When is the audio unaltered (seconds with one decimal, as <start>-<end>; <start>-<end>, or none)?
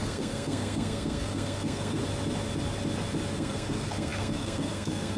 2.0-3.3